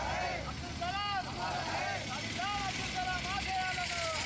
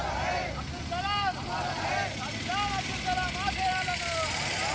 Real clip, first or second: first